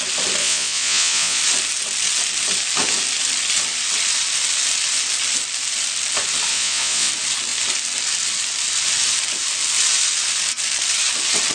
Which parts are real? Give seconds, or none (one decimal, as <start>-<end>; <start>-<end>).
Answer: 0.0-0.4; 1.4-6.5; 7.1-11.5